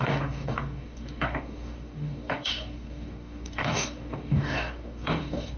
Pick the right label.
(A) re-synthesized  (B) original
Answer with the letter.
A